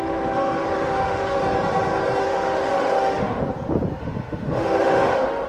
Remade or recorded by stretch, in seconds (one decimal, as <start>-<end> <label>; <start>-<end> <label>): 0.0-1.4 remade; 1.4-2.2 recorded; 2.2-3.4 remade; 3.4-4.0 recorded; 4.0-5.5 remade